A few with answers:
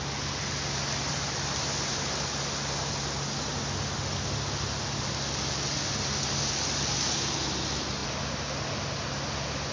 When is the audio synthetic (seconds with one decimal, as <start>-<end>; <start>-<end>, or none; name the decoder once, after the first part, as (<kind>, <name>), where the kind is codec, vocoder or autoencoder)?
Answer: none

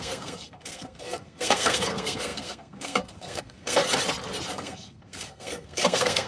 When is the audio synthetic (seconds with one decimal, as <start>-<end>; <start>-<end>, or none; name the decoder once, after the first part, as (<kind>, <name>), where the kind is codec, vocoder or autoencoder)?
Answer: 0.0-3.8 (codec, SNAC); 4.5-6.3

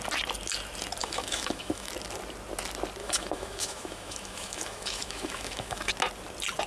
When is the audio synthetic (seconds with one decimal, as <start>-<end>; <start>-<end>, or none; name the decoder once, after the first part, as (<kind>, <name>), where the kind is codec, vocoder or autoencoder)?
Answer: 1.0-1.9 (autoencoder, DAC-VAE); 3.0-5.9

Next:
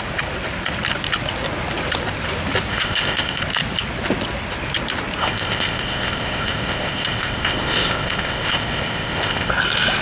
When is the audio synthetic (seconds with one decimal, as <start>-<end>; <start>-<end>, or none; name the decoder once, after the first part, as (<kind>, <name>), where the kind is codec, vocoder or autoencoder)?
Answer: 2.7-3.4 (codec, ZipCodec); 5.2-9.5

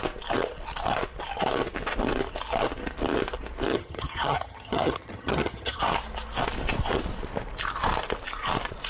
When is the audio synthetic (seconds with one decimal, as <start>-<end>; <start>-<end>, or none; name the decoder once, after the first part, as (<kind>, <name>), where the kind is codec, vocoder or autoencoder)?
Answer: 3.7-5.8 (vocoder, HiFi-GAN)

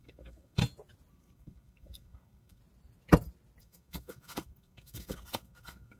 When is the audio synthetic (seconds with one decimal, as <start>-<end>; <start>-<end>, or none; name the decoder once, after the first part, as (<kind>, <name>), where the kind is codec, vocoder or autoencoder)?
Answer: 0.0-0.6 (codec, SNAC); 1.1-2.6; 3.6-6.0

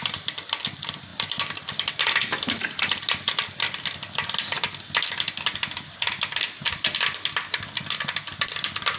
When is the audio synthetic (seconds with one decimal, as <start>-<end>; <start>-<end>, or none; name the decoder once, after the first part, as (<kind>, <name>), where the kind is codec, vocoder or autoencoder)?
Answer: 1.1-1.9 (vocoder, BigVGAN v2)